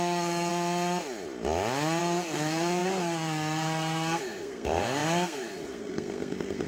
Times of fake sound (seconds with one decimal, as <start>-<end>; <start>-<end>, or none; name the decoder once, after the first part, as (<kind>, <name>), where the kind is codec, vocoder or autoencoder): 0.0-0.5 (codec, SNAC); 2.0-6.7